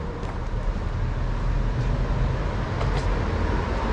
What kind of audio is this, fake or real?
real